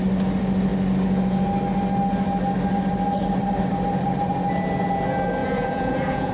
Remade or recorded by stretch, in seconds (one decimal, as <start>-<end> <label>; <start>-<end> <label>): 0.0-5.4 recorded; 5.4-6.3 remade